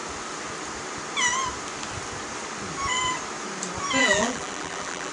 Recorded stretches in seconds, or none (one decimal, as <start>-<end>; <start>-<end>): 0.0-4.0